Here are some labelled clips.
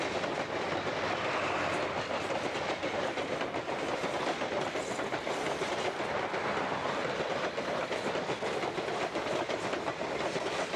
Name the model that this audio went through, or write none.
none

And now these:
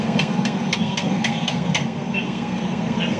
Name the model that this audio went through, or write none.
codec, SNAC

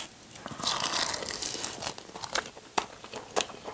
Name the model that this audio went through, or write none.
none